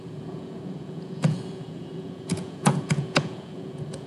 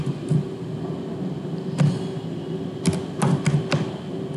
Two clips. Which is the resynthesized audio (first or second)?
first